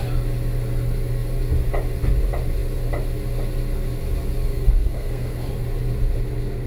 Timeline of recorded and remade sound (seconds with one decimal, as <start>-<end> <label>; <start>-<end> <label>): 0.0-4.5 recorded; 4.5-5.5 remade; 5.5-6.7 recorded